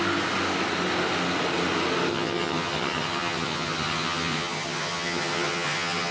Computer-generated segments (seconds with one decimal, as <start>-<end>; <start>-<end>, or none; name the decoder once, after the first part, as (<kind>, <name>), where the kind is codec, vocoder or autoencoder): 2.1-6.1 (vocoder, HiFi-GAN)